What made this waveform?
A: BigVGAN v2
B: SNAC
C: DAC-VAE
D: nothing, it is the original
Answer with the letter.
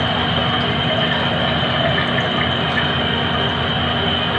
D